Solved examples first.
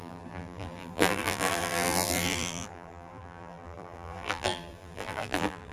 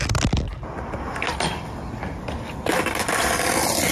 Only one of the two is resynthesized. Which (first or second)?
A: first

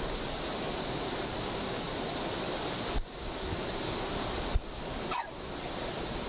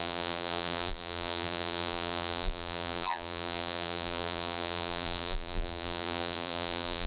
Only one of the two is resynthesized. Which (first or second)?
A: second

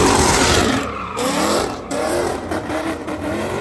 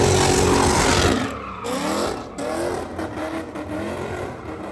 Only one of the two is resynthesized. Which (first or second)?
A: first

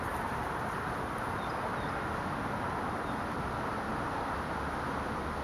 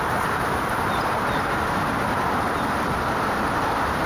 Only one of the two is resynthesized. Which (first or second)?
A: second